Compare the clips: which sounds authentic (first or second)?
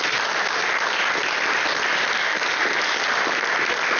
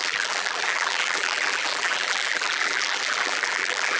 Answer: first